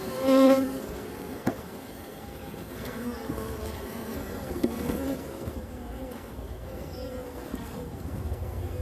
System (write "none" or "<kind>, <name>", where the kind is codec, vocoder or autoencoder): codec, SNAC